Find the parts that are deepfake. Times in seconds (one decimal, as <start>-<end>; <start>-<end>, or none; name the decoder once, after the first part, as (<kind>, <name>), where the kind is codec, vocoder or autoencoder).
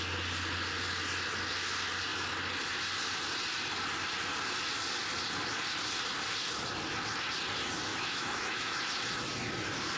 7.9-8.8 (autoencoder, DAC-VAE)